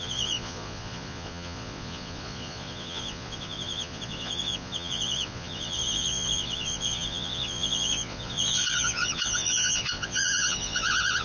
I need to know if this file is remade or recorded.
remade